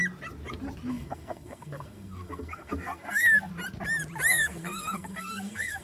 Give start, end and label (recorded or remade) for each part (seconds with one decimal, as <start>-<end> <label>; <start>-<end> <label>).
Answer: 0.0-0.9 recorded; 0.9-3.5 remade; 3.5-4.3 recorded; 4.3-5.8 remade

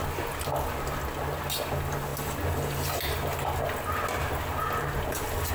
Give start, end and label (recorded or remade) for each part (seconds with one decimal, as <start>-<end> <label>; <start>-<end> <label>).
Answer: 0.0-5.5 recorded

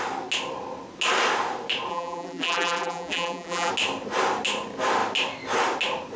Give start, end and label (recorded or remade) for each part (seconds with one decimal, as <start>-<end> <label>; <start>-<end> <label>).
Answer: 0.0-1.9 recorded; 1.9-3.7 remade; 3.7-6.2 recorded

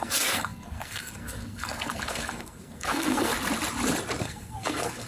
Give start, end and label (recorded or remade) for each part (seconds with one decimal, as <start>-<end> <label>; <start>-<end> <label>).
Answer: 0.0-3.3 remade; 3.3-4.2 recorded; 4.2-5.1 remade